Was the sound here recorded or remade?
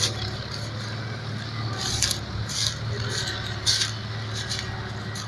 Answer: recorded